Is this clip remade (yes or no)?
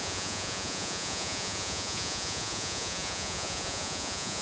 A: yes